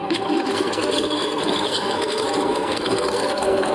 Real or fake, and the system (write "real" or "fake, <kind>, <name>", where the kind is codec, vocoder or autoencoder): fake, codec, SNAC